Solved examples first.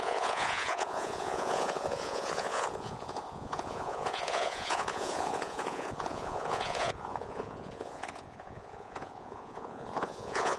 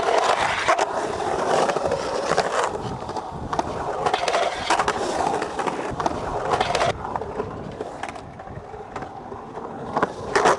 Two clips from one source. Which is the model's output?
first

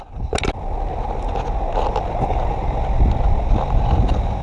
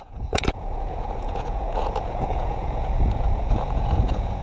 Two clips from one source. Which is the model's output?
second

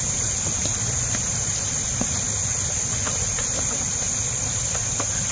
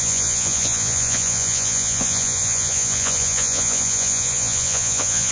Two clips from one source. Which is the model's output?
second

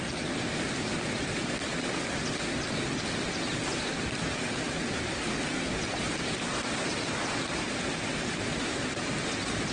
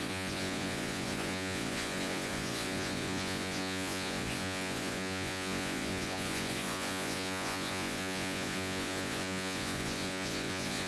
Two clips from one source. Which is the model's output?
second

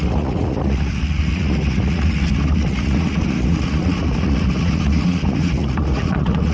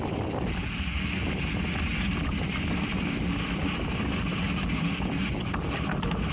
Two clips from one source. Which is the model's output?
first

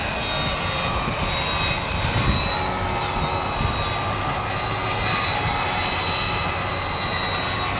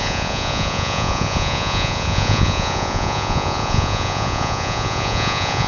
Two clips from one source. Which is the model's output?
second